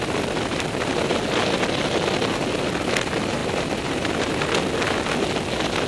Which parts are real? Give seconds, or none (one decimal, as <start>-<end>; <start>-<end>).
0.0-3.4; 4.4-5.9